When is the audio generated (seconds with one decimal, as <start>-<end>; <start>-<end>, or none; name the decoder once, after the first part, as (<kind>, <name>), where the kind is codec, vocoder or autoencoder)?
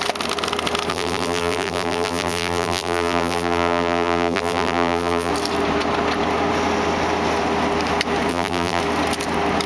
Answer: 0.9-5.3 (vocoder, BigVGAN v2); 8.3-8.8